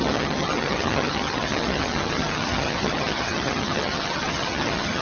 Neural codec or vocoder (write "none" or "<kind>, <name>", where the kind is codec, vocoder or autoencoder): vocoder, HiFi-GAN